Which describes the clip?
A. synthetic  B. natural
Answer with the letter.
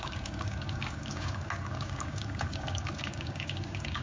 A